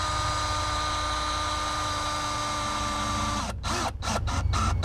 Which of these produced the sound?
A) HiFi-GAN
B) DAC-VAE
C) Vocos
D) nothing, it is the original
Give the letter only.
D